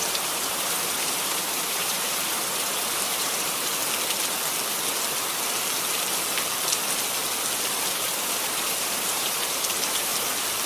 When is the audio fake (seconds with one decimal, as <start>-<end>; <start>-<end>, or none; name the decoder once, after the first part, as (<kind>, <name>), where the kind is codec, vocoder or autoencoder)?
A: 0.0-3.7 (vocoder, BigVGAN v2); 7.8-10.1